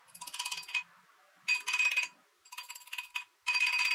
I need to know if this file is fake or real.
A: real